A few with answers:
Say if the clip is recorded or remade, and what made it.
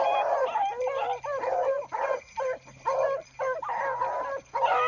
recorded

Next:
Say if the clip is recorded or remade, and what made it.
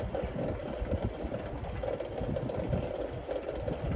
recorded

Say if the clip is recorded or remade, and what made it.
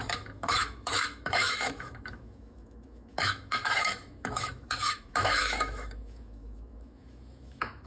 remade, autoencoder, DAC-VAE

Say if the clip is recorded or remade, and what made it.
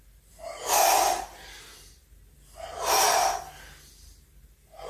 recorded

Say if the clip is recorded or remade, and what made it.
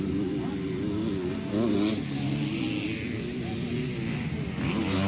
recorded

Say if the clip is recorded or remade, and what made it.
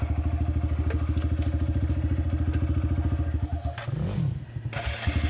recorded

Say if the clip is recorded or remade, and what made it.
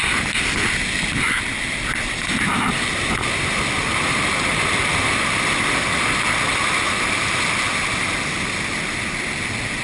recorded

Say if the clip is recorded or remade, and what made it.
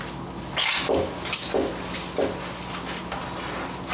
recorded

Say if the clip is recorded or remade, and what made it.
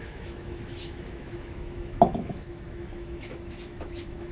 remade, autoencoder, DAC-VAE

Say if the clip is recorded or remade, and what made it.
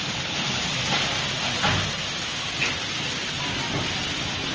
recorded